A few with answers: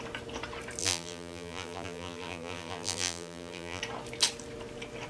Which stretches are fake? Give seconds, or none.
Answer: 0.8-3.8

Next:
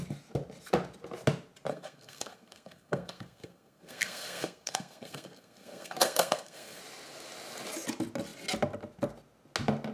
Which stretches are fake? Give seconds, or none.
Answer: 1.7-6.8

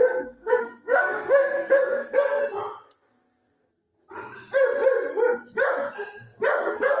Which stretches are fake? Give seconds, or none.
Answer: 0.0-2.4; 6.6-7.0

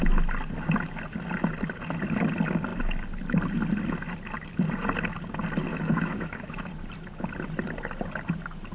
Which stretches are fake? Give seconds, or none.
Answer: 5.7-6.7

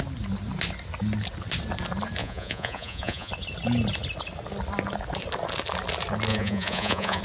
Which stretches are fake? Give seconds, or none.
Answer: 2.2-3.3; 6.3-7.2

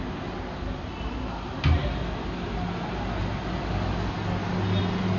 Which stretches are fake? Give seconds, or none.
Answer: none

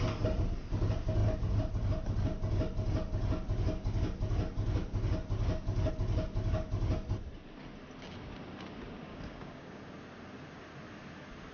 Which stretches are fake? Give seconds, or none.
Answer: 9.1-9.8